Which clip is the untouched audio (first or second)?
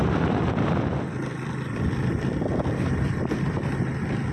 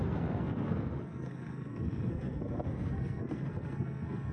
first